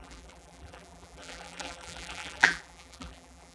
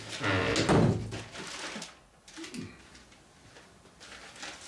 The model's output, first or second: first